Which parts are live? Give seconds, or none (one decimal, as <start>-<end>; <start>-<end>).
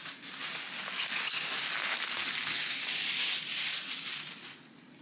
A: 0.0-5.0